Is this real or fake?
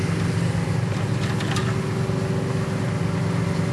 real